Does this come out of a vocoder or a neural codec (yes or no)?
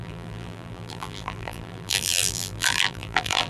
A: yes